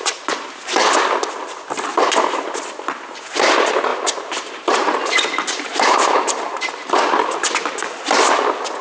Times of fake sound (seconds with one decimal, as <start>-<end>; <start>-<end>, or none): 3.9-6.7